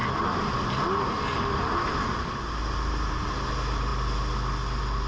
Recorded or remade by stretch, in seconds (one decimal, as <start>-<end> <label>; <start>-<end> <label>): 0.0-5.1 recorded